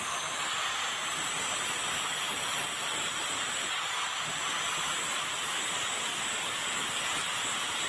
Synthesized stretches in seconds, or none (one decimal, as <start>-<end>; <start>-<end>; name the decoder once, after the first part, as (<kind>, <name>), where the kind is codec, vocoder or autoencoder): none